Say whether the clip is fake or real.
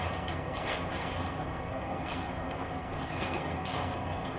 fake